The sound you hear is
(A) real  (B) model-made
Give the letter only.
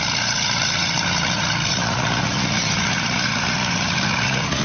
B